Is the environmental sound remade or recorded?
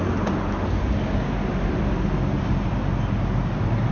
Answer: recorded